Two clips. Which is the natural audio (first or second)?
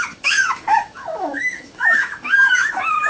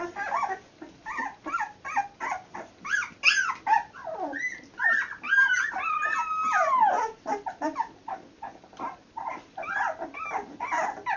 second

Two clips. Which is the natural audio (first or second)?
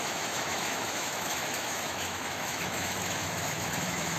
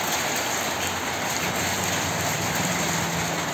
second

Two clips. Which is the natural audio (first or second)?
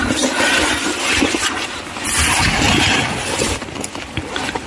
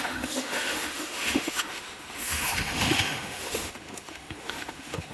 first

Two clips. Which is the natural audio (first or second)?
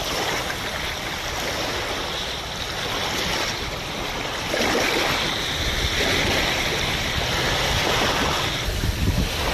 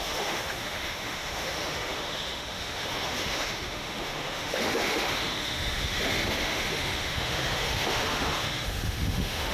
first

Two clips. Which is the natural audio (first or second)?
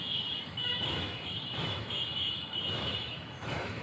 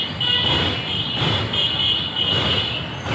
second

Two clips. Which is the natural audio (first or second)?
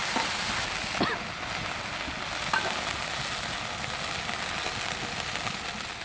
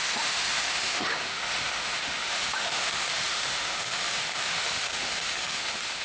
first